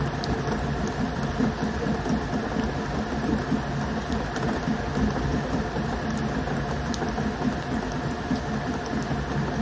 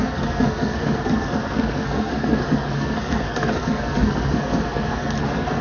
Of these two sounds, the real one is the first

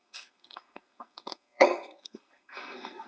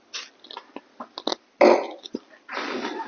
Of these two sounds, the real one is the second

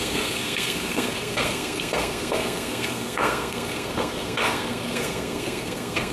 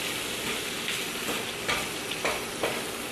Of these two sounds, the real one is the second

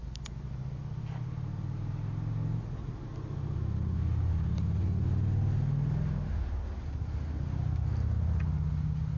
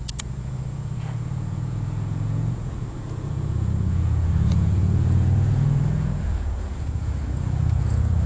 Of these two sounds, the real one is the first